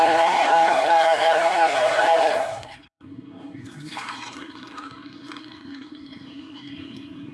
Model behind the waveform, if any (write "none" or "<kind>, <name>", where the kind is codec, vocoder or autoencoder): codec, SNAC